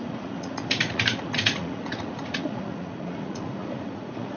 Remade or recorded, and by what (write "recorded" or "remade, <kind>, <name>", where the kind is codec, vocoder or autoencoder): remade, vocoder, Vocos